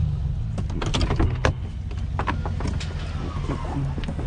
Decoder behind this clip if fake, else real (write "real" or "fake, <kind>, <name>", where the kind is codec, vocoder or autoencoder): real